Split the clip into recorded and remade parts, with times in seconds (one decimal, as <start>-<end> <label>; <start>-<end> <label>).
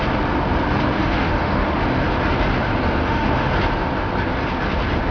0.0-1.0 recorded; 1.0-1.8 remade; 1.8-3.0 recorded; 3.0-3.5 remade; 3.5-5.1 recorded